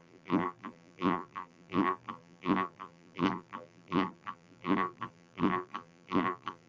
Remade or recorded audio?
remade